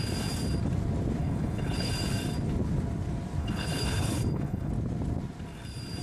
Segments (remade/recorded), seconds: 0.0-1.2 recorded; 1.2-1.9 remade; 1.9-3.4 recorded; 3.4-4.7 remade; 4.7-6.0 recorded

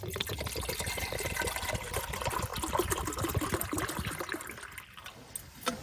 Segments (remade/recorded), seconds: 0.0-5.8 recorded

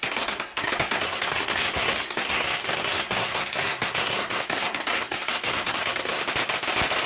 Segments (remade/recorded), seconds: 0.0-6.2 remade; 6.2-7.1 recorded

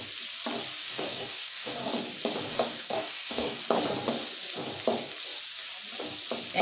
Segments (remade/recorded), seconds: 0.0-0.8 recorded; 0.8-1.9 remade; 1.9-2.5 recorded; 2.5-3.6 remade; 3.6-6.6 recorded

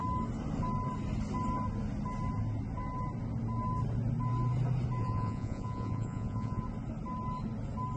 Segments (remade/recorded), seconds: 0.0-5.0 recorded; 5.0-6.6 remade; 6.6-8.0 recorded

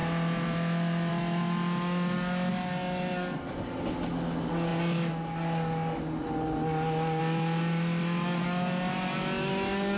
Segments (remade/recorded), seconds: 0.0-10.0 recorded

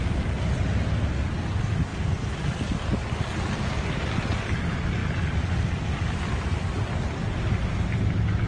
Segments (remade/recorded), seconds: 0.0-8.5 recorded

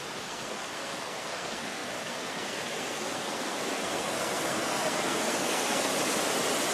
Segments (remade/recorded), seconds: 0.0-5.9 remade; 5.9-6.7 recorded